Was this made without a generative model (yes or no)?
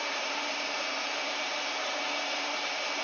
no